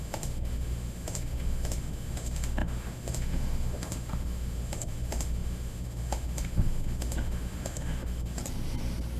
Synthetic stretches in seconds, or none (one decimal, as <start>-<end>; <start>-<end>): 0.0-8.4